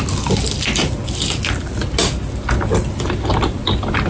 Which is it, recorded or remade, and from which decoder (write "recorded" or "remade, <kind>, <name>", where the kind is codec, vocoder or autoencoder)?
recorded